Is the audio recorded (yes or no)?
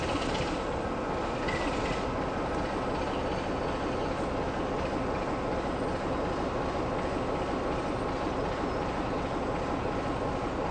yes